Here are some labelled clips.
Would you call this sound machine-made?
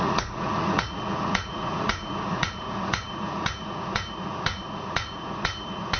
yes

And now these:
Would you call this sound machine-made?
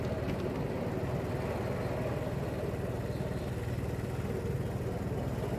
no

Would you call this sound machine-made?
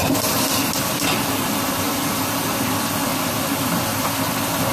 no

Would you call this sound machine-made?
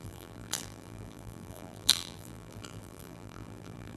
yes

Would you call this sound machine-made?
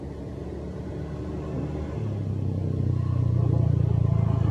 no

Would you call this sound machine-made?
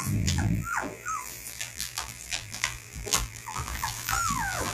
yes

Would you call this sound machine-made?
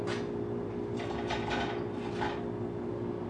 no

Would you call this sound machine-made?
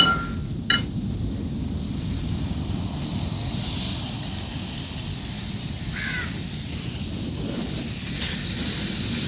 no